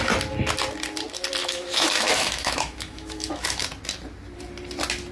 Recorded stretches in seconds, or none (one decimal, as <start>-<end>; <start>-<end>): 0.0-1.4; 3.7-5.1